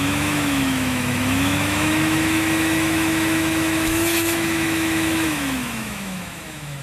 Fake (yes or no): yes